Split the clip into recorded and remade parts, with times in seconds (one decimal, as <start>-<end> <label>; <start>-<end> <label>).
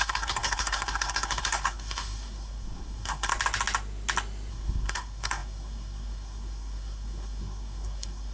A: 0.0-3.3 remade; 3.3-4.5 recorded; 4.5-8.3 remade